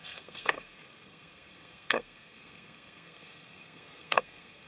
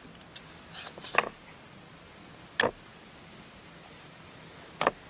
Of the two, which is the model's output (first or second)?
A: first